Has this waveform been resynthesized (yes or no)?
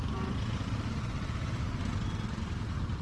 no